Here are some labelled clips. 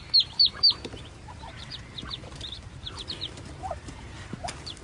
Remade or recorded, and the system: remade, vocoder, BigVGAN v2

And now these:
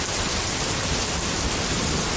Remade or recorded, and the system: recorded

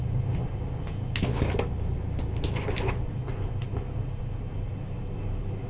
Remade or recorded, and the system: recorded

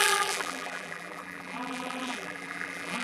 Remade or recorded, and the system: remade, vocoder, BigVGAN v2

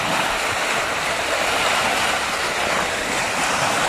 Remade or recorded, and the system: recorded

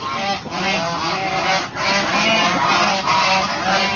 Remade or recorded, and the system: recorded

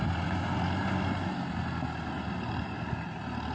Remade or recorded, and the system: recorded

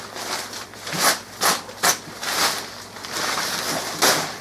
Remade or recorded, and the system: remade, vocoder, BigVGAN v2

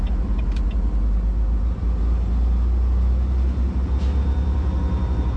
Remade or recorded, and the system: recorded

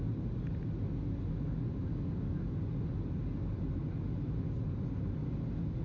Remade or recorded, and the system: recorded